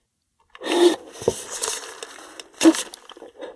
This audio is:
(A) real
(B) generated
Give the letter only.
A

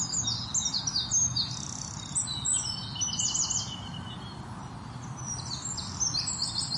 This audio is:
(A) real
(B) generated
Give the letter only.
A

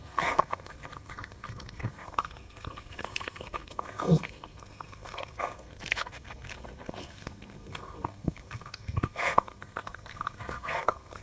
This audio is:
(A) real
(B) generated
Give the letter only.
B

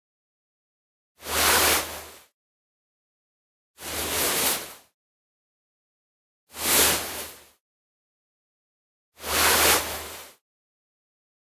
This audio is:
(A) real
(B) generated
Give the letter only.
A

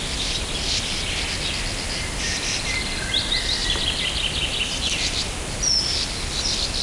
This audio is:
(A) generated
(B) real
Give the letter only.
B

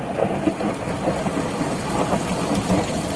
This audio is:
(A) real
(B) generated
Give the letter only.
A